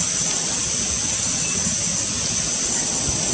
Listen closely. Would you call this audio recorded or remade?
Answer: recorded